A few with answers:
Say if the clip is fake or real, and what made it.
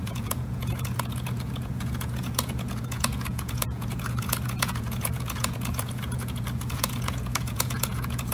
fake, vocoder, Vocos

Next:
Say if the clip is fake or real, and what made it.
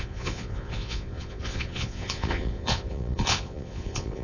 fake, vocoder, Vocos